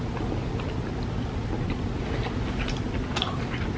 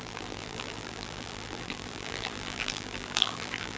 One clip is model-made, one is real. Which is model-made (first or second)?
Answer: second